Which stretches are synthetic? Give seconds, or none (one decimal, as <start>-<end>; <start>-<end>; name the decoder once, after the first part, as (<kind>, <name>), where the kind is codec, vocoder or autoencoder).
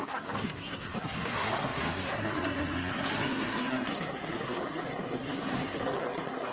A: 0.0-6.5 (codec, SNAC)